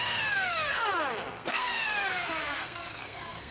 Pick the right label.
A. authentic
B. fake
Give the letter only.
B